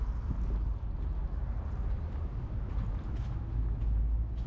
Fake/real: real